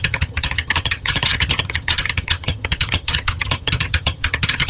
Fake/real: fake